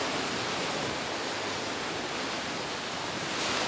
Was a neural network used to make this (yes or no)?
no